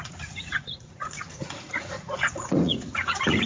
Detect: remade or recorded remade